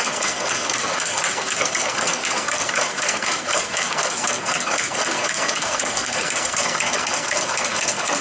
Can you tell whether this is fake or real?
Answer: fake